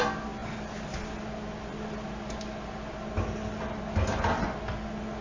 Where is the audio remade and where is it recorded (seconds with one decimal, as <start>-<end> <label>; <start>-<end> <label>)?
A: 0.0-5.2 recorded